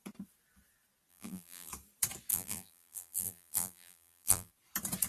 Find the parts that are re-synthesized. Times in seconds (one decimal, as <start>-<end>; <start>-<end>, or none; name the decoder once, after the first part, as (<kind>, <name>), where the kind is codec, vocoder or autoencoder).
1.1-1.7 (vocoder, BigVGAN v2); 2.3-4.5